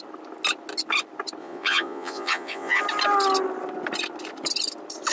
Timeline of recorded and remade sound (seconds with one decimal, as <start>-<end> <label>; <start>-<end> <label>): 0.0-1.4 recorded; 1.4-2.8 remade; 2.8-5.1 recorded